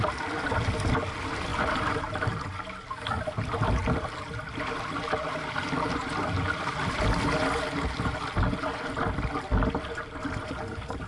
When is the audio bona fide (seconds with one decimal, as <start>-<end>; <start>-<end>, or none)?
0.0-11.1